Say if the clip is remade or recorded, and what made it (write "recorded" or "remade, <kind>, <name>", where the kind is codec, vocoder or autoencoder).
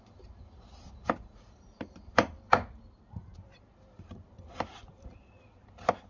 remade, vocoder, BigVGAN v2